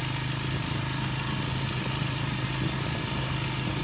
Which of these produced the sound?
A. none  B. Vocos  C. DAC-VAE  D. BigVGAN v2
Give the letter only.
A